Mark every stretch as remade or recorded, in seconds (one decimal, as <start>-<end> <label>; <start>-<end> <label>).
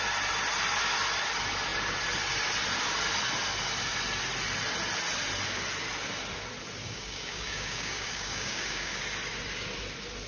0.0-6.8 recorded; 6.8-9.0 remade; 9.0-10.3 recorded